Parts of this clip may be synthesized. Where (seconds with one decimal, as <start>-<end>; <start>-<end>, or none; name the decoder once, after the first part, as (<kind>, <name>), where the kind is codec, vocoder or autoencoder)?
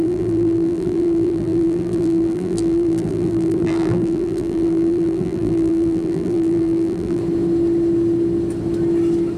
0.0-7.2 (vocoder, BigVGAN v2)